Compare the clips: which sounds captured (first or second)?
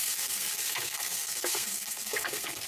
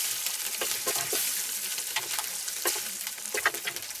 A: second